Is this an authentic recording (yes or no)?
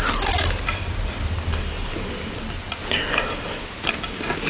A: yes